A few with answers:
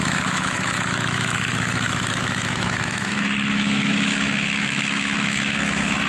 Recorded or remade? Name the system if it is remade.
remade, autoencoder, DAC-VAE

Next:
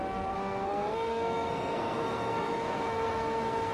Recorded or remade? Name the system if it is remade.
remade, codec, SNAC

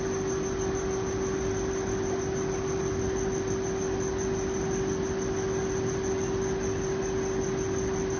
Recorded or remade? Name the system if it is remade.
recorded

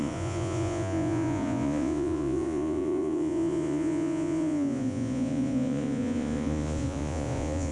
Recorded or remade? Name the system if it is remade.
remade, vocoder, Vocos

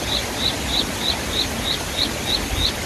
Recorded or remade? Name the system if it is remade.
recorded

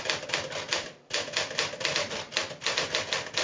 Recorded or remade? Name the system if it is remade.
recorded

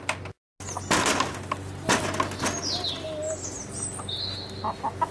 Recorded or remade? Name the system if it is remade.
recorded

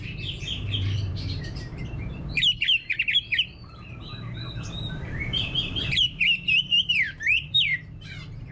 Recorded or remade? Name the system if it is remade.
remade, vocoder, BigVGAN v2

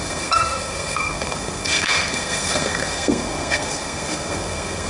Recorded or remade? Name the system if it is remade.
remade, codec, SNAC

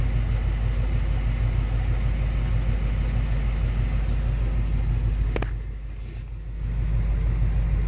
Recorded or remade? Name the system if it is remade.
recorded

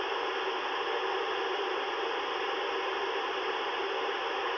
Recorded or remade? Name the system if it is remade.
recorded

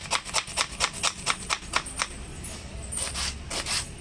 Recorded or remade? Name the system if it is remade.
recorded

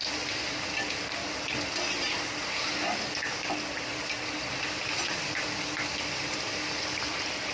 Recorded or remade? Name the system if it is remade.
recorded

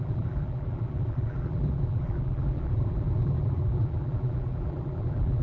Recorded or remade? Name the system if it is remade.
remade, vocoder, BigVGAN v2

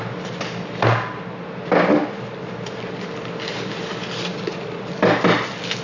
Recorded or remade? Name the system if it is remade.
recorded